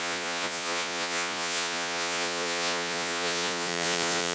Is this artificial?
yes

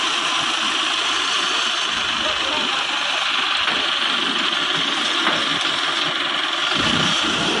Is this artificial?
no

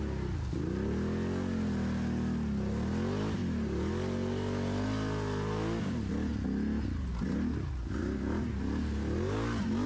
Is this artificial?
no